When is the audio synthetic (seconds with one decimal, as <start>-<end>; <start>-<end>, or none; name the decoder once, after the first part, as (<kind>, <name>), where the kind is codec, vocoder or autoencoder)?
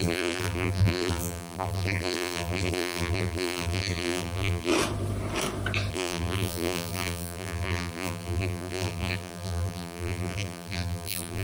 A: 0.0-4.7 (vocoder, BigVGAN v2); 5.9-11.4